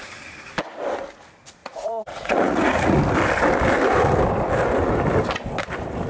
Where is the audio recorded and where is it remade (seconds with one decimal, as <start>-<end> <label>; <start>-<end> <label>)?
0.0-1.6 recorded; 1.6-3.0 remade; 3.0-6.1 recorded